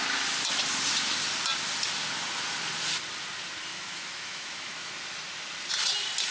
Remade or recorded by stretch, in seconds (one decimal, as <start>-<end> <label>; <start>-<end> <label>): 0.0-3.7 recorded; 3.7-4.9 remade; 4.9-6.3 recorded